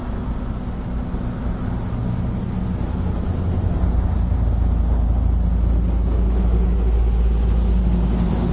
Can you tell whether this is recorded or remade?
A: recorded